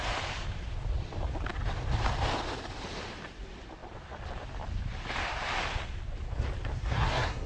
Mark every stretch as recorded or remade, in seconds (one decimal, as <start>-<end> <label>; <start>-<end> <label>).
0.0-6.8 recorded; 6.8-7.5 remade